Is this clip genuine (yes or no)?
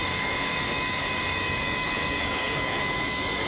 no